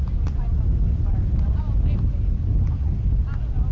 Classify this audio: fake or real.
real